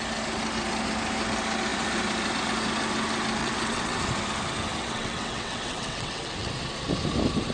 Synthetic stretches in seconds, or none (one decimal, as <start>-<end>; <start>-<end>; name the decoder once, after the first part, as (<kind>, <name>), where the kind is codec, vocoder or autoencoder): 3.4-4.0 (vocoder, WaveNeXt); 4.8-6.5